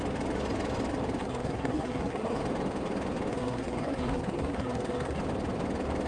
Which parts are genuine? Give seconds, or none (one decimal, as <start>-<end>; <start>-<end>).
0.0-1.2; 2.4-3.3; 5.2-6.1